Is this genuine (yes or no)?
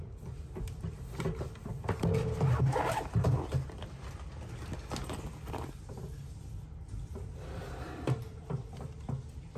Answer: yes